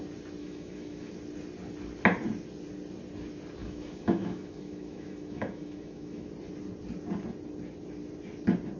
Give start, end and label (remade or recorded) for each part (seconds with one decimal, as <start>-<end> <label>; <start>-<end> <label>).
0.0-0.4 recorded; 0.4-1.1 remade; 1.1-3.6 recorded; 3.6-6.3 remade; 6.3-8.8 recorded